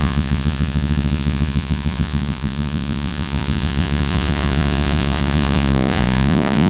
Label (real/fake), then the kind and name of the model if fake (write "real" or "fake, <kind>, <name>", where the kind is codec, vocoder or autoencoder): fake, vocoder, Vocos